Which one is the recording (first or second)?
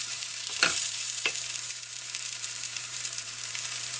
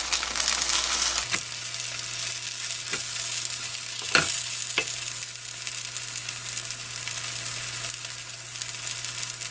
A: second